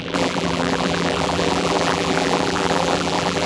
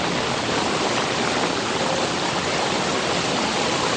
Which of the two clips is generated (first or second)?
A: first